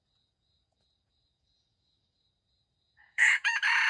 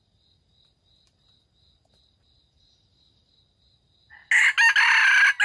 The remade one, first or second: first